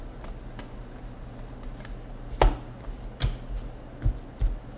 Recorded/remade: recorded